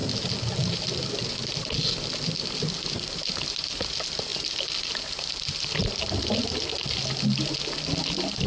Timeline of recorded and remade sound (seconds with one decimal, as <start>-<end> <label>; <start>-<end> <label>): 0.0-8.5 recorded